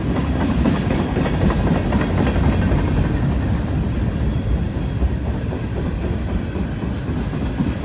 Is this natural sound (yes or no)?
yes